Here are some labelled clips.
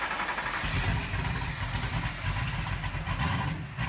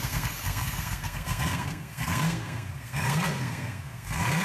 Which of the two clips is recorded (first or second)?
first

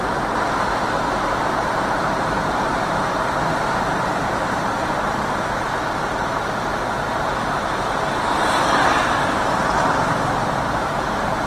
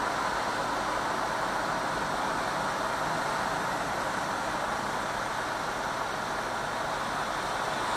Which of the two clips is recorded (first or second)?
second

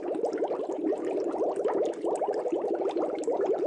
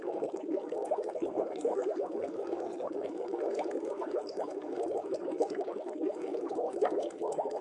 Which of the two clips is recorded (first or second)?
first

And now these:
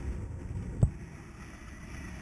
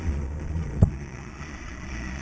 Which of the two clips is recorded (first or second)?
first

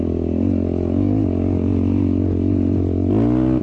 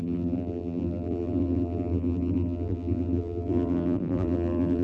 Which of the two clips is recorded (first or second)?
first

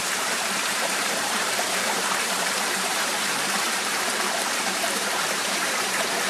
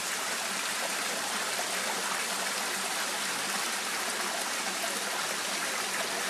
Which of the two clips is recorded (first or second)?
second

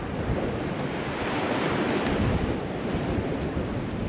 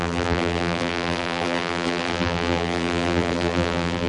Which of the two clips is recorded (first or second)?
first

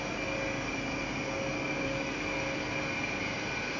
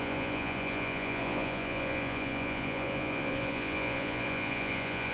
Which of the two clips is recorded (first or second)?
first